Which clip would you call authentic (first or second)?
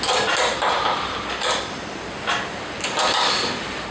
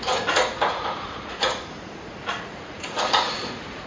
first